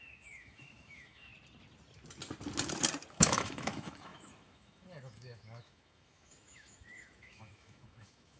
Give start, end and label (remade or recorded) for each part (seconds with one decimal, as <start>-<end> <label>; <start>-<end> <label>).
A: 0.0-1.3 remade; 1.3-3.1 recorded; 3.1-8.4 remade